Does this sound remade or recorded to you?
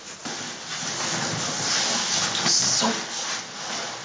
recorded